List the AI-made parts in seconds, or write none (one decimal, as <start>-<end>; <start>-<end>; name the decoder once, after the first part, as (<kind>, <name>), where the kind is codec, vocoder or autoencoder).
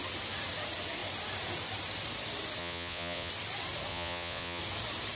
2.6-3.3 (vocoder, Vocos); 3.9-4.6